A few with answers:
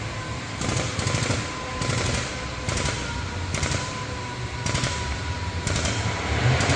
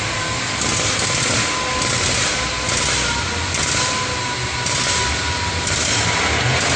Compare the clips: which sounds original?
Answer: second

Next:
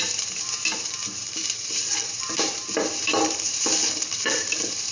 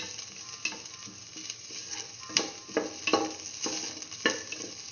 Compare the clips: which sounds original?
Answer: second